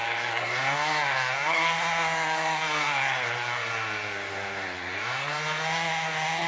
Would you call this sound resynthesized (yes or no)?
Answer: yes